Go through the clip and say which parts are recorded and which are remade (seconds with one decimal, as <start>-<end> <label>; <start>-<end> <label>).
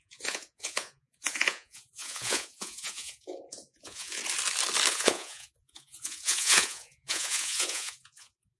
0.0-4.2 remade; 4.2-4.9 recorded; 4.9-8.6 remade